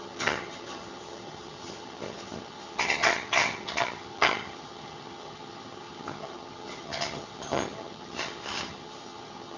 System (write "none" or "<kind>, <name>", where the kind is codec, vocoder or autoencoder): vocoder, HiFi-GAN